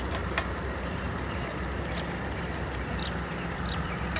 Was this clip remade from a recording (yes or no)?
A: yes